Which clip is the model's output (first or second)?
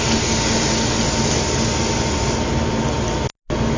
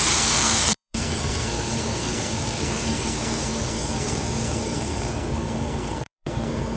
second